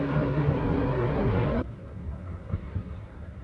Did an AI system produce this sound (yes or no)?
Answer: yes